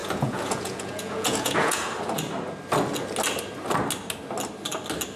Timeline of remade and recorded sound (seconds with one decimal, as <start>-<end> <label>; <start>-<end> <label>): 0.0-1.8 remade; 1.8-5.2 recorded